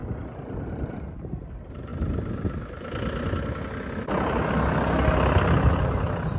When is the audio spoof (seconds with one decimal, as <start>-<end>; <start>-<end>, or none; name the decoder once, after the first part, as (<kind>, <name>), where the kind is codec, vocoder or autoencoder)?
0.7-1.9 (vocoder, BigVGAN v2); 5.7-6.4